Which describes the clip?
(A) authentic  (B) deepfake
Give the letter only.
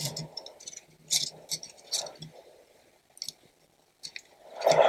A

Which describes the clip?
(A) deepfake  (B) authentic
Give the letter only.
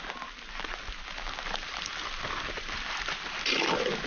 B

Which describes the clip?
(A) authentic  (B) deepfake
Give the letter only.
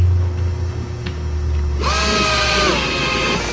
A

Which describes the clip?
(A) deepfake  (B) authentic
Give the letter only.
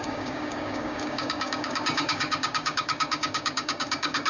A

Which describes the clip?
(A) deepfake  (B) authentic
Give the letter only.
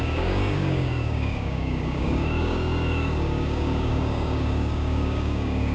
A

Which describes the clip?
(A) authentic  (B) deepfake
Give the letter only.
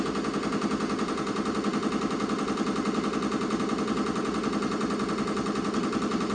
A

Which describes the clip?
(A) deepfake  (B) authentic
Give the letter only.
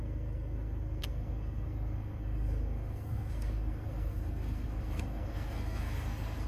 A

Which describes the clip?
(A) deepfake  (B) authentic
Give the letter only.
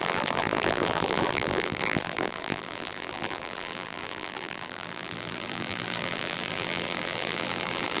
A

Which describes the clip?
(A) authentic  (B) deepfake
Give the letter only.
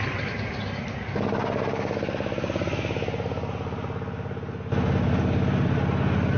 A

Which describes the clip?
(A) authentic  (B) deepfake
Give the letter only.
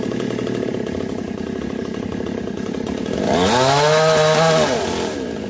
A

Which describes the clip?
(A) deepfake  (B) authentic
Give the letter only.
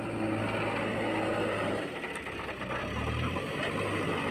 B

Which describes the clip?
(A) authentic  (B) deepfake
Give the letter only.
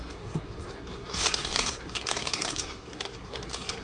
B